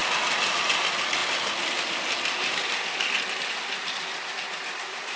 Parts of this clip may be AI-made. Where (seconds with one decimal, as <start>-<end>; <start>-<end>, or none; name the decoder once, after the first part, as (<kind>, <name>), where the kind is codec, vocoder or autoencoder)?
none